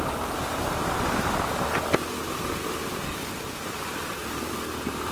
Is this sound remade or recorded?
remade